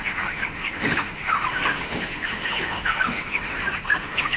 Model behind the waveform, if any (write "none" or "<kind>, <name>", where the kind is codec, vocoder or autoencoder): autoencoder, DAC-VAE